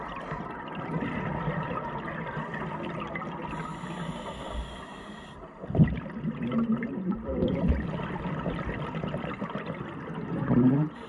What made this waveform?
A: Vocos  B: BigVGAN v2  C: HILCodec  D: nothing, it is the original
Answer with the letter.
D